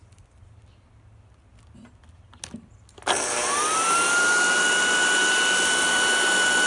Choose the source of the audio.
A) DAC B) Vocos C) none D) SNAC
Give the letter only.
C